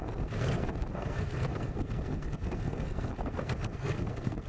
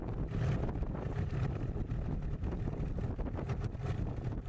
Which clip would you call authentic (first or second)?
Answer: second